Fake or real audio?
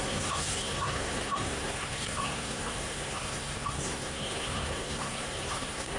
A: fake